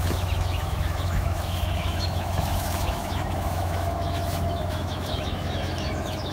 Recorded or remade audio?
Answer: remade